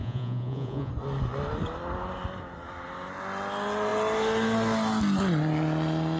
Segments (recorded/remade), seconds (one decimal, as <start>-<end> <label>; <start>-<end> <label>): 0.0-0.9 remade; 0.9-6.2 recorded